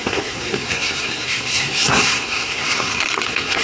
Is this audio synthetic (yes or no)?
yes